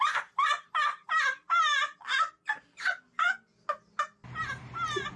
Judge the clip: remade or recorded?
recorded